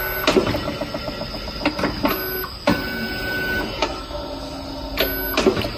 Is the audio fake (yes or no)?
no